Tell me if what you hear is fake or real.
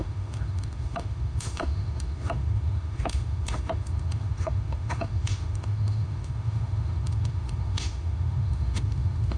fake